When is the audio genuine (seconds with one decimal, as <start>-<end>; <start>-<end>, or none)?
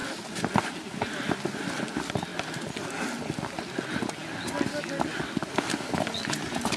0.0-6.8